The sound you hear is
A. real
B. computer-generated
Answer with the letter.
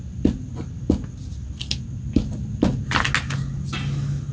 A